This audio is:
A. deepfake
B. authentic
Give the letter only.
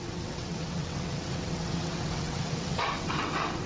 A